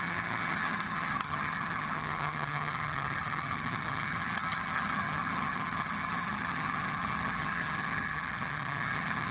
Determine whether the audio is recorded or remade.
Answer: remade